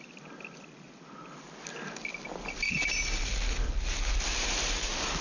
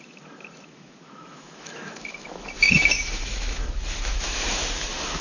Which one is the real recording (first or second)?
first